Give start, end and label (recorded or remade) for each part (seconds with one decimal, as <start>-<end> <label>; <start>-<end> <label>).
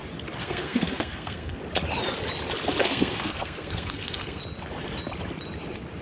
0.0-0.4 recorded; 0.4-1.6 remade; 1.6-2.8 recorded; 2.8-4.4 remade; 4.4-6.0 recorded